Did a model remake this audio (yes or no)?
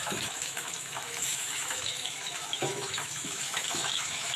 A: yes